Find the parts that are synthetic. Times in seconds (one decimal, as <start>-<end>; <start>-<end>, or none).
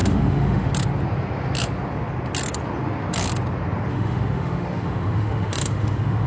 0.0-0.7; 3.9-6.3